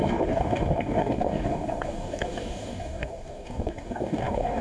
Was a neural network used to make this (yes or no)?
yes